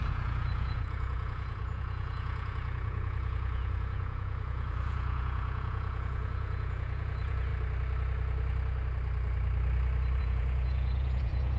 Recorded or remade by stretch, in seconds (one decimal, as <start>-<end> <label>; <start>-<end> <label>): 0.0-7.5 remade; 7.5-10.2 recorded; 10.2-11.6 remade